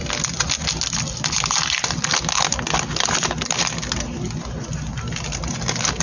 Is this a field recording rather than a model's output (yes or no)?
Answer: yes